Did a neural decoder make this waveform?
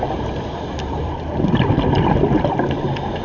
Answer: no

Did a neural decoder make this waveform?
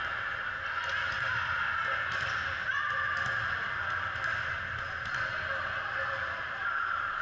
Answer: no